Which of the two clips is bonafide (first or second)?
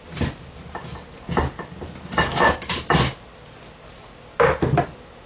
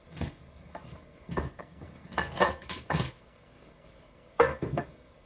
first